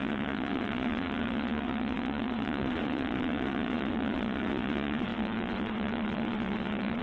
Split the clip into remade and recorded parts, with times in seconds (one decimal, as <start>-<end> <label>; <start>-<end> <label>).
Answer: 0.0-7.0 remade